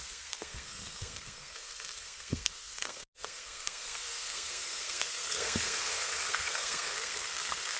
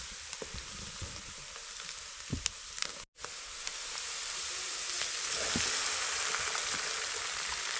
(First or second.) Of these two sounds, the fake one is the first